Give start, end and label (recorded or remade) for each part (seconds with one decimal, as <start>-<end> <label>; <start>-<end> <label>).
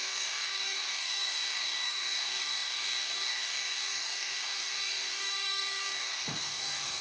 0.0-7.0 remade